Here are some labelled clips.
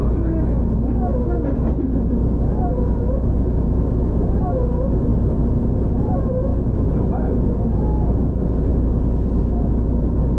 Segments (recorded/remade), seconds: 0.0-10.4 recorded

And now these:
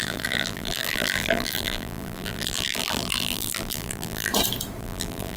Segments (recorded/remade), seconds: 0.0-4.3 remade; 4.3-4.8 recorded; 4.8-5.4 remade

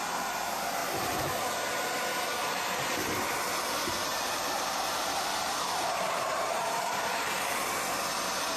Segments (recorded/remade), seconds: 0.0-0.8 recorded; 0.8-1.3 remade; 1.3-4.1 recorded; 4.1-7.7 remade; 7.7-8.6 recorded

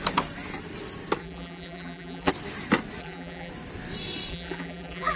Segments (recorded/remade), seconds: 0.0-1.2 recorded; 1.2-2.3 remade; 2.3-3.0 recorded; 3.0-3.5 remade; 3.5-4.3 recorded; 4.3-5.2 remade

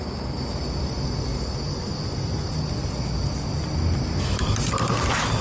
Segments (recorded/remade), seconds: 0.0-5.4 recorded

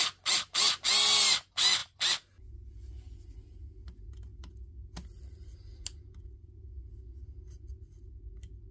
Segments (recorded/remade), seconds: 0.0-8.7 recorded